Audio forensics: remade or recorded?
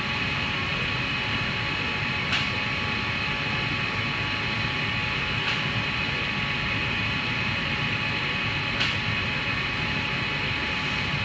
recorded